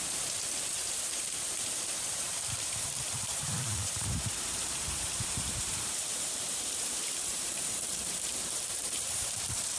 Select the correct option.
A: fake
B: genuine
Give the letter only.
A